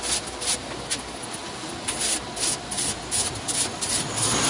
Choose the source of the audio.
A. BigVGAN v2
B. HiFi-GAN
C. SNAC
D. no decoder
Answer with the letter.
D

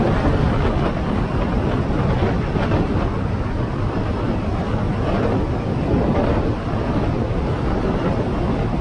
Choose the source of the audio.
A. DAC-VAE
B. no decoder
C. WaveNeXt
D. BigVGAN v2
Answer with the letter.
B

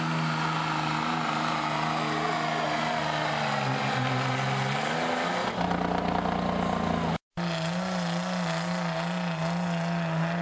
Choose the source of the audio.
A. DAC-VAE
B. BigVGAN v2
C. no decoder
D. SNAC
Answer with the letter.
C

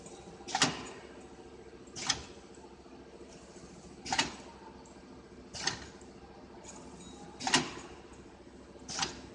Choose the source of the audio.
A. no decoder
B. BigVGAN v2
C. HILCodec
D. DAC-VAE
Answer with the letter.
A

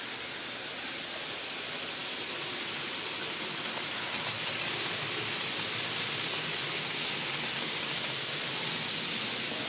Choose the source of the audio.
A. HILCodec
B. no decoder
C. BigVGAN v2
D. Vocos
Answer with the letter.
B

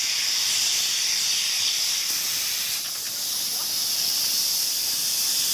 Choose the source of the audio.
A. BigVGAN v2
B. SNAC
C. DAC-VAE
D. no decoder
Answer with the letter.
A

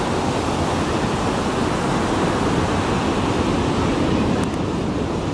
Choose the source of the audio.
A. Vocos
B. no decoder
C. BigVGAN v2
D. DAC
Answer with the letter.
C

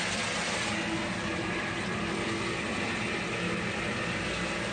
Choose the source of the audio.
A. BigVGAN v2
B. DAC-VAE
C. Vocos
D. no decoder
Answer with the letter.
D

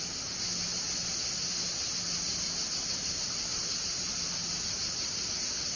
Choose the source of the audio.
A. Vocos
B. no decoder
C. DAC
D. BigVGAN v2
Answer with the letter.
B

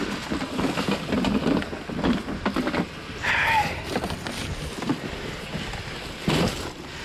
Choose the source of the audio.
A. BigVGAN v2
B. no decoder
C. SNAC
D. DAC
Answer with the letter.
B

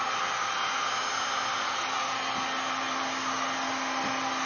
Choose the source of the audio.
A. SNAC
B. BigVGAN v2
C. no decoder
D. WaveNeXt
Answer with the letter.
C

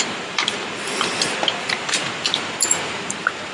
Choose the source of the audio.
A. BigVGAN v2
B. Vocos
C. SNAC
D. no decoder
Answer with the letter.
A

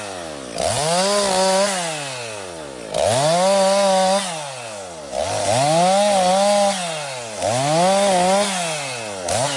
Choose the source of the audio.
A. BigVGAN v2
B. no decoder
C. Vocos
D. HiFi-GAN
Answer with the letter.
B